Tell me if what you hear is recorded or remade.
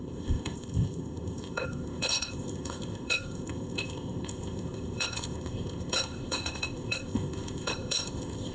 remade